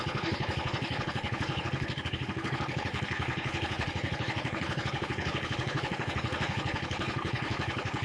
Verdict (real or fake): fake